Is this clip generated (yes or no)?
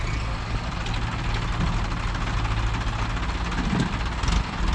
no